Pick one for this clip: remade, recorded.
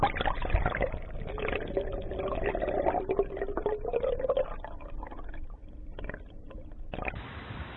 recorded